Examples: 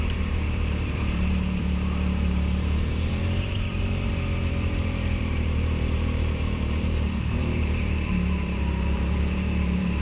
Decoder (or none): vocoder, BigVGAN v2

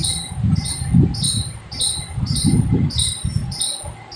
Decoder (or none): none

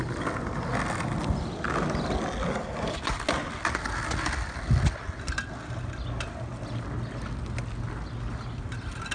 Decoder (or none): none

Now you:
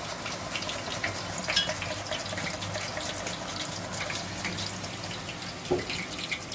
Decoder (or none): none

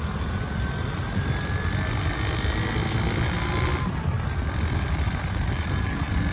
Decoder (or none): none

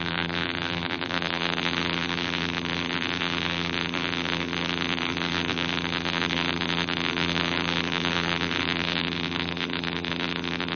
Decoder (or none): vocoder, BigVGAN v2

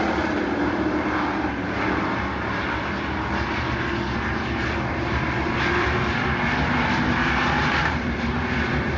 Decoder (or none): vocoder, BigVGAN v2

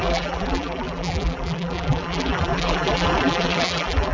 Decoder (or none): vocoder, BigVGAN v2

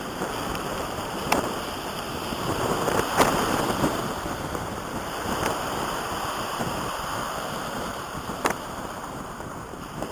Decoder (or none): vocoder, BigVGAN v2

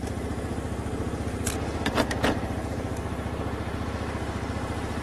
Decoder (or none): vocoder, BigVGAN v2